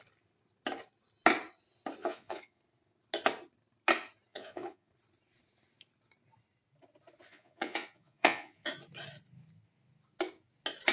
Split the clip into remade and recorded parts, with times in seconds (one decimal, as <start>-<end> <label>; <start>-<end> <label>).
0.0-2.0 recorded; 2.0-2.6 remade; 2.6-4.3 recorded; 4.3-4.9 remade; 4.9-7.3 recorded; 7.3-8.7 remade; 8.7-10.9 recorded